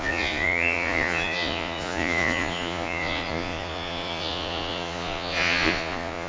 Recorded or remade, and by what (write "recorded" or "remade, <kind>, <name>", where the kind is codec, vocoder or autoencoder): remade, vocoder, Vocos